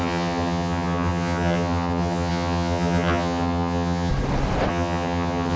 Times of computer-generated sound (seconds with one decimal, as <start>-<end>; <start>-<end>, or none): 0.0-4.1; 4.7-5.6